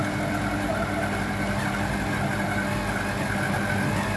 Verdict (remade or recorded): recorded